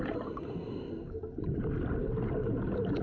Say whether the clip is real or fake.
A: real